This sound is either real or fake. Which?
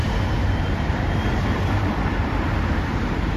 fake